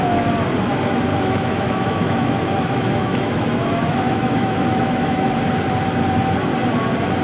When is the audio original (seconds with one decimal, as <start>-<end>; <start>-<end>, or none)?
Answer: 0.0-1.1; 5.3-7.2